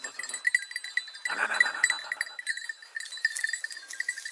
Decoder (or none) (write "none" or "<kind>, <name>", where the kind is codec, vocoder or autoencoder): none